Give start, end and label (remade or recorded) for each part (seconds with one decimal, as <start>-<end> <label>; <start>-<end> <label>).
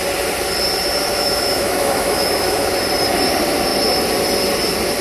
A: 0.0-1.1 recorded; 1.1-2.7 remade; 2.7-5.0 recorded